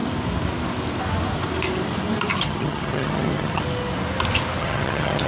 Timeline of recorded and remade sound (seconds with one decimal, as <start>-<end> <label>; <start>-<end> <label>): 0.0-2.4 recorded; 2.4-3.6 remade; 3.6-4.6 recorded; 4.6-5.3 remade